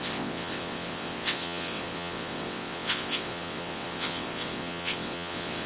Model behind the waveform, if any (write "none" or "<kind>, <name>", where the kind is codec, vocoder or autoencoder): vocoder, WaveNeXt